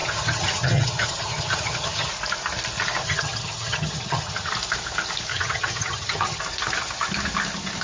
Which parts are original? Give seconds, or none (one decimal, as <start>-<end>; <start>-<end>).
2.1-3.0; 4.5-5.3; 6.4-7.8